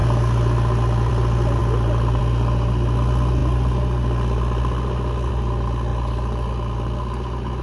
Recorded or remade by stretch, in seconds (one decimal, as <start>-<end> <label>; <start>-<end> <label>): 0.0-5.9 recorded; 5.9-7.6 remade